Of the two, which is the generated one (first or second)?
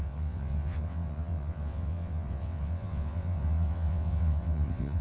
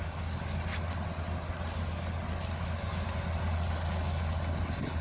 first